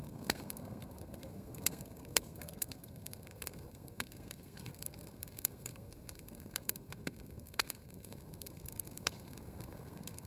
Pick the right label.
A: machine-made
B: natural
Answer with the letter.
A